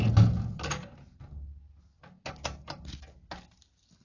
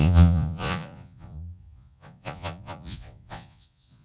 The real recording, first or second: first